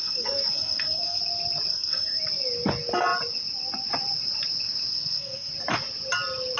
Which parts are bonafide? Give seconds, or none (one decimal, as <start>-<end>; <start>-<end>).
1.2-1.7; 2.2-4.9; 5.5-6.6